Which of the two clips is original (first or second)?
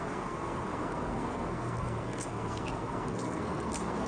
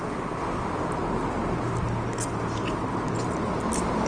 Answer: second